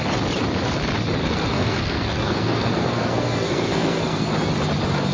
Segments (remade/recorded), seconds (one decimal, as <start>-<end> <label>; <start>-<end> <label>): 0.0-1.2 recorded; 1.2-4.3 remade; 4.3-5.1 recorded